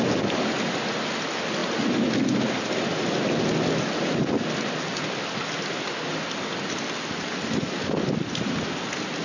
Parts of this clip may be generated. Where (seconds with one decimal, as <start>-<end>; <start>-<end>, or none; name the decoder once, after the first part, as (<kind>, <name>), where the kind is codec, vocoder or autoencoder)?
none